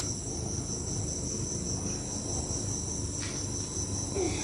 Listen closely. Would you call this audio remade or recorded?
recorded